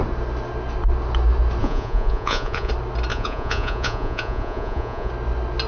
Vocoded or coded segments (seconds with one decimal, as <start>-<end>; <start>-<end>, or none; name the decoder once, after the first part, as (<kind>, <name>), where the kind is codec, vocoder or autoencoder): 1.6-2.7 (vocoder, Vocos); 3.1-5.1